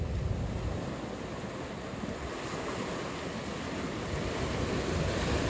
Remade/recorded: recorded